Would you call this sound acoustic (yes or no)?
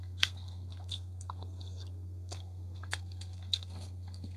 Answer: no